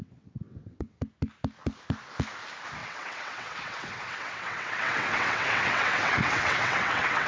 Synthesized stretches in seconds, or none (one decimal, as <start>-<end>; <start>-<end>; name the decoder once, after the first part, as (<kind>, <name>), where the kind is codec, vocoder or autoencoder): 0.0-1.0 (vocoder, WaveNeXt); 2.8-7.3